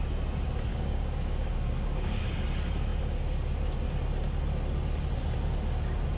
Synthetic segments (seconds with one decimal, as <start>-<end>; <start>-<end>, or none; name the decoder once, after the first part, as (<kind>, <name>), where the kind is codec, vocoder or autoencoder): 0.7-2.2 (codec, DAC)